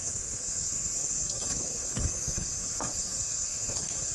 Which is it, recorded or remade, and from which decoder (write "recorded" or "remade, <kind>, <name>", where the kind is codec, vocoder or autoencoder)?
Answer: remade, codec, SNAC